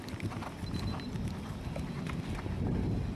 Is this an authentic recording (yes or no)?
yes